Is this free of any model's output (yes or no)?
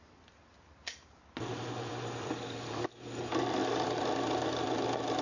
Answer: no